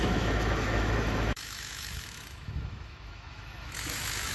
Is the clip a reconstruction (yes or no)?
yes